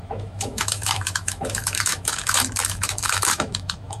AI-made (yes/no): yes